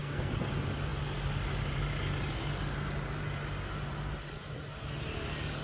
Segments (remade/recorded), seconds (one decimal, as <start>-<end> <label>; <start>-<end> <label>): 0.0-0.5 remade; 0.5-5.6 recorded